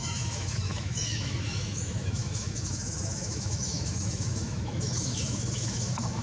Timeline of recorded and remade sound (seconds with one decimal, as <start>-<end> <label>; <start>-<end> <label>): 0.0-6.2 remade